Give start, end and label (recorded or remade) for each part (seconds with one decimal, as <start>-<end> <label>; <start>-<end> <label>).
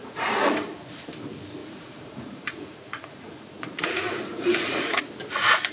0.0-0.5 remade; 0.5-1.6 recorded; 1.6-5.0 remade; 5.0-5.7 recorded